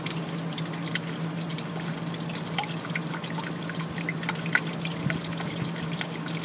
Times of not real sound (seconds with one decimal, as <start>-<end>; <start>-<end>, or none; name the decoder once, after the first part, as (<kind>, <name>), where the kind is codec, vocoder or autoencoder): none